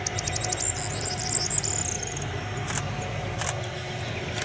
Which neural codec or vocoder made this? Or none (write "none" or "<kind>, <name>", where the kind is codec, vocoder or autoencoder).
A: none